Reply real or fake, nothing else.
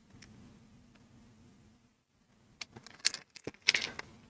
real